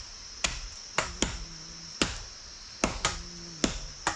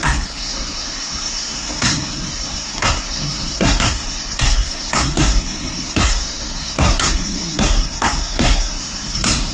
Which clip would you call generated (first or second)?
second